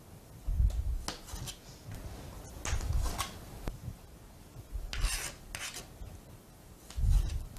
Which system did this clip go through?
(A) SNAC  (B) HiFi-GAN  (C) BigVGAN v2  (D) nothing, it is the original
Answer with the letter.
D